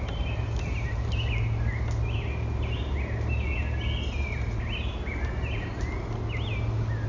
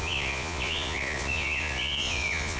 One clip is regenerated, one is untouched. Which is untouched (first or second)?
first